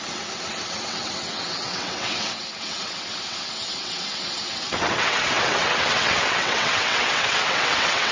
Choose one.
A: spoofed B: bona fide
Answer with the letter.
A